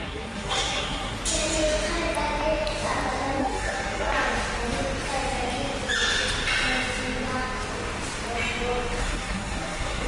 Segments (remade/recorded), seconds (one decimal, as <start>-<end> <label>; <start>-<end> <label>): 0.0-1.2 remade; 1.2-3.4 recorded; 3.4-4.1 remade; 4.1-9.0 recorded; 9.0-10.1 remade